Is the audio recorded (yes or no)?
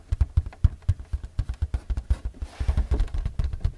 yes